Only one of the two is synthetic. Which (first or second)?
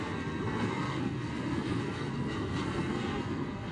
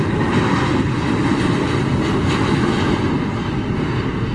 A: first